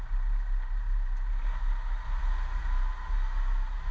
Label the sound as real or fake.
real